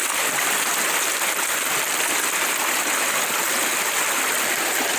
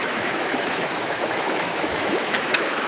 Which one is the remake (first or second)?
second